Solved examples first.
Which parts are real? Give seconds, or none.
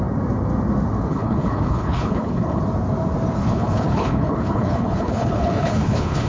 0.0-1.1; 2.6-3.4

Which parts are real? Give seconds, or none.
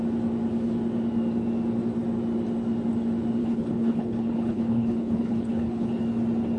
0.0-3.4; 6.0-6.6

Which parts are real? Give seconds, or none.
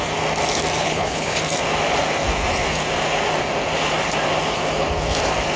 0.0-0.8; 1.4-5.6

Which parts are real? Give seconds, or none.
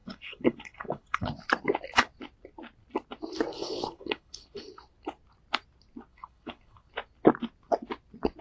1.3-3.5; 4.7-6.1; 6.9-8.4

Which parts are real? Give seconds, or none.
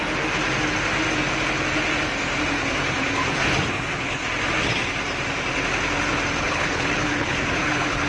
0.0-3.6; 4.2-6.4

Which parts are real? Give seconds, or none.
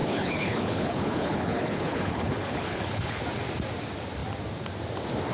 3.2-5.3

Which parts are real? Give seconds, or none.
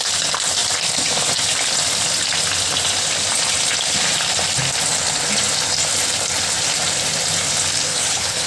0.0-7.9